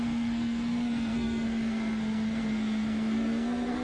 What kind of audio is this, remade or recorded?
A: remade